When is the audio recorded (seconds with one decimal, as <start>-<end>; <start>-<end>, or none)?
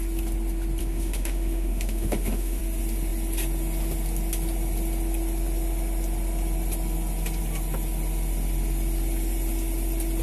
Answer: 0.0-0.8; 2.6-10.2